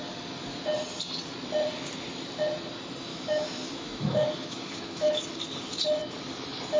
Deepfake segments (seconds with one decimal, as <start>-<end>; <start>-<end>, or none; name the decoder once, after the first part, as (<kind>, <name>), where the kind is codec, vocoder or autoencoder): 3.1-5.2 (autoencoder, DAC-VAE)